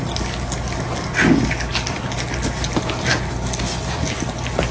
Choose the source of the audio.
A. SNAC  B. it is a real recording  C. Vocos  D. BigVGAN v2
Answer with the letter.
B